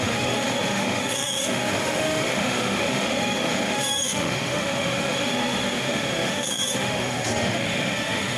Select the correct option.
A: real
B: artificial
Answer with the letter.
B